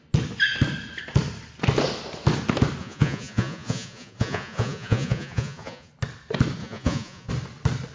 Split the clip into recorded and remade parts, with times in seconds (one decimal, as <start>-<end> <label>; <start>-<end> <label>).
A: 0.0-2.8 recorded; 2.8-5.9 remade; 5.9-6.6 recorded; 6.6-7.3 remade; 7.3-7.9 recorded

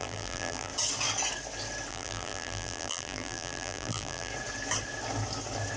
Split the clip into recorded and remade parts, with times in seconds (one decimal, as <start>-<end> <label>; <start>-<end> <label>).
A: 0.0-0.7 remade; 0.7-1.9 recorded; 1.9-4.3 remade; 4.3-5.8 recorded

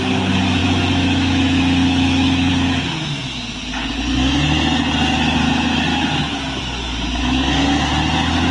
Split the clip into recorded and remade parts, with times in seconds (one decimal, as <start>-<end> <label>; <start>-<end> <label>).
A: 0.0-0.6 recorded; 0.6-2.5 remade; 2.5-5.9 recorded; 5.9-6.6 remade; 6.6-8.5 recorded

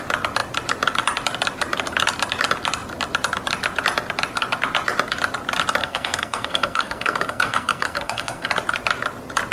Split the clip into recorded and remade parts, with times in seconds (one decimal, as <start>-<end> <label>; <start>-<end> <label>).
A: 0.0-5.8 recorded; 5.8-8.5 remade; 8.5-9.5 recorded